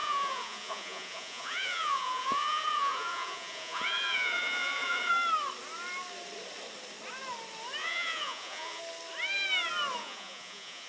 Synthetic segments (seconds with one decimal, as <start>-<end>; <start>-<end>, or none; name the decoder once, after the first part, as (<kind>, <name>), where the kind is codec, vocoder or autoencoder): 0.0-5.1 (vocoder, Vocos); 7.8-8.8; 10.0-10.9